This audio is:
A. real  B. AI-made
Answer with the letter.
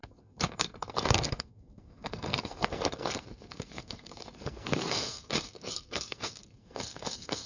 B